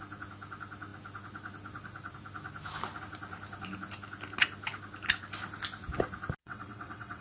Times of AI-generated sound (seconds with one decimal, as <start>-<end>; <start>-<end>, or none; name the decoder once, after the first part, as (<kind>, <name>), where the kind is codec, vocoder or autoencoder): 6.4-7.2 (vocoder, WaveNeXt)